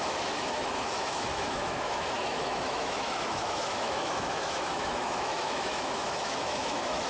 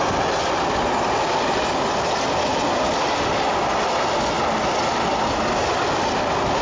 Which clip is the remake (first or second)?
first